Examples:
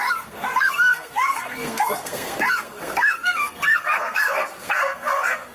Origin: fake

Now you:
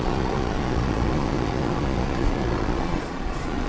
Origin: fake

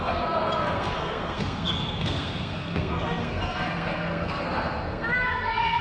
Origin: fake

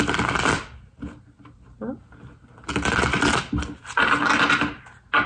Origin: real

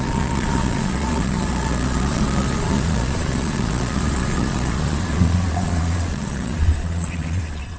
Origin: fake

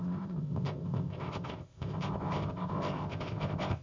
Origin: fake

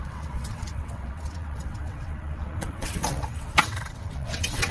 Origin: fake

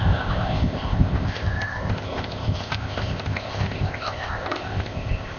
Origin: fake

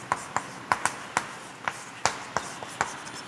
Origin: real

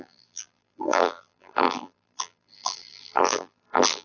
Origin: fake